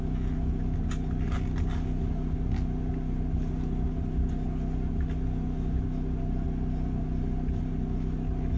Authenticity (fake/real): real